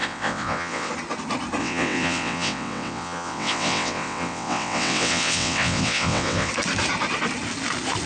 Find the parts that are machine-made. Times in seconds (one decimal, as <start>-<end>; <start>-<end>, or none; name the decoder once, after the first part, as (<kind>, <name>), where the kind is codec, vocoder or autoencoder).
0.0-0.9 (vocoder, WaveNeXt); 1.6-6.5